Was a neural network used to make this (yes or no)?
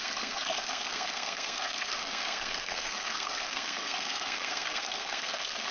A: yes